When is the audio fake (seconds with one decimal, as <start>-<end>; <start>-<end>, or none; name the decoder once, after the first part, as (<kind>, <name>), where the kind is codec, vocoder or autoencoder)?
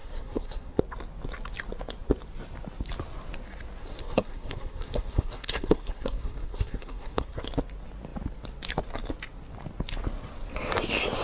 0.0-0.8 (codec, SNAC); 3.8-7.4